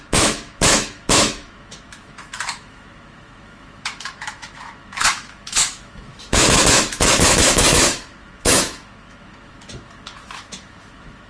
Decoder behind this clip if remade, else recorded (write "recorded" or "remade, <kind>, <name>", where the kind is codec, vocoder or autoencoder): remade, autoencoder, DAC-VAE